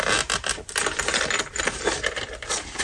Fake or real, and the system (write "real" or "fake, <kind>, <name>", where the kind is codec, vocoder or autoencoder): real